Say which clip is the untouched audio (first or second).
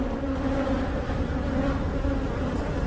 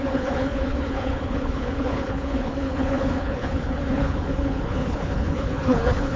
first